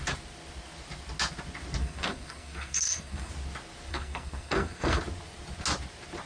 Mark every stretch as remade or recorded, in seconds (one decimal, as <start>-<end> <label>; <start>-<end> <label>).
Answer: 0.0-1.8 recorded; 1.8-3.3 remade; 3.3-3.9 recorded; 3.9-5.0 remade; 5.0-6.3 recorded